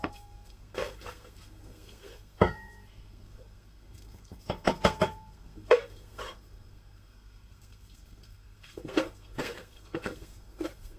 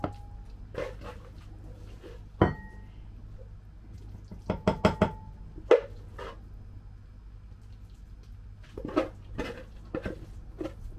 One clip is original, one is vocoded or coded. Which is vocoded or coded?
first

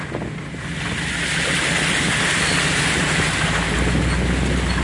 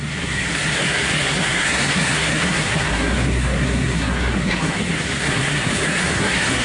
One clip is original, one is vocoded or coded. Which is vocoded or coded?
second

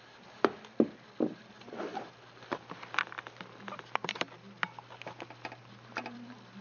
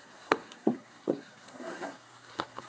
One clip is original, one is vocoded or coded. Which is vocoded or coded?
second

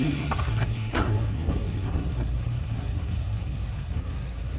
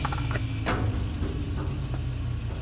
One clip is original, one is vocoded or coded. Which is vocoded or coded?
first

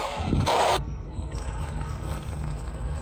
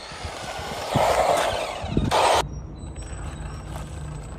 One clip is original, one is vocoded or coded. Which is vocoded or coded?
first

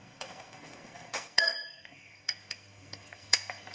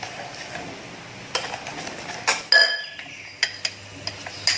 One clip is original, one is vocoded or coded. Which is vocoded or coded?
first